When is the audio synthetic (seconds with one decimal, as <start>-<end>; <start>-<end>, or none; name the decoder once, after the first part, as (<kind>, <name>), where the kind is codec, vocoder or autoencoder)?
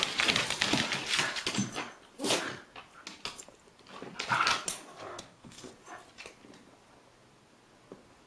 5.1-5.7 (codec, SNAC)